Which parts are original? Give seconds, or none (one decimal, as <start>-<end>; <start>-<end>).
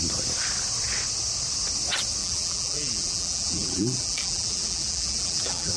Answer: 0.0-2.2